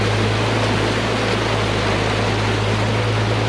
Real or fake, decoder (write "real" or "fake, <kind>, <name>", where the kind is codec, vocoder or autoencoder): real